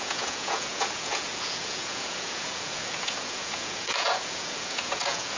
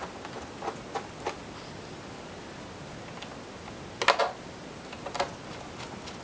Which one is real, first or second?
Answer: second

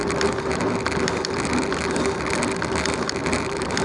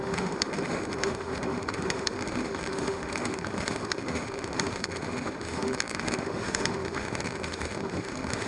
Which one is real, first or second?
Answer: first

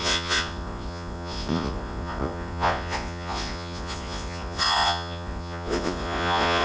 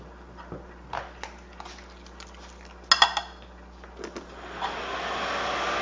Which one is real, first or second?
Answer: second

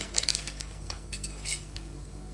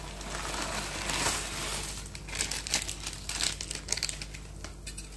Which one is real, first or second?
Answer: second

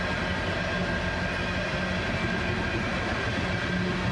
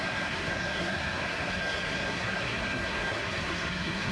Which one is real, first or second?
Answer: first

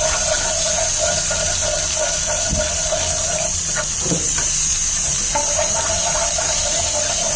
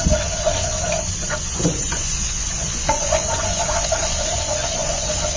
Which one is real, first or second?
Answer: first